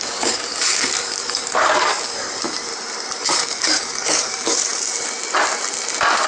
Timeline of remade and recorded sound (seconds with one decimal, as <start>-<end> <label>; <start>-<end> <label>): 0.0-2.7 remade; 2.7-3.2 recorded; 3.2-4.7 remade; 4.7-6.3 recorded